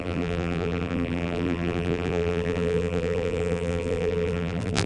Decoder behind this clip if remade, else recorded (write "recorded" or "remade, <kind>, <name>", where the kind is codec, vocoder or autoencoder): remade, vocoder, BigVGAN v2